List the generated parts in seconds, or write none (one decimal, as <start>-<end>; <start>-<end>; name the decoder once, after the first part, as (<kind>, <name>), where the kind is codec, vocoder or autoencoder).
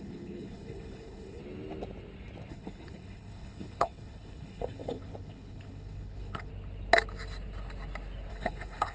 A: 0.0-1.4 (codec, HILCodec); 2.5-6.5; 8.3-8.9